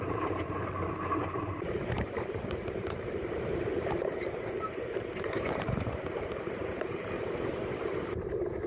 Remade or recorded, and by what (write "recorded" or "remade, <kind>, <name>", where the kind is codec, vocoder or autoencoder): remade, vocoder, BigVGAN v2